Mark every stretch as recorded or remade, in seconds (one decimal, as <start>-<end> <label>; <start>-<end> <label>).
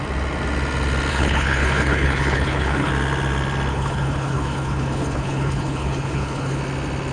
0.0-1.1 recorded; 1.1-2.9 remade; 2.9-3.7 recorded; 3.7-6.6 remade; 6.6-7.1 recorded